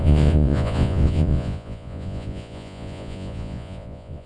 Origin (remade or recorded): remade